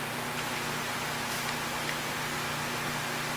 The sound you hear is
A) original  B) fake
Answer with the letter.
A